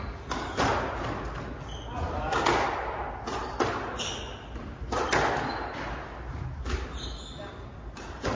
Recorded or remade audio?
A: recorded